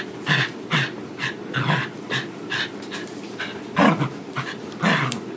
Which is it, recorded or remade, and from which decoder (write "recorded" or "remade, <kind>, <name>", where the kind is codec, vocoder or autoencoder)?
remade, vocoder, BigVGAN v2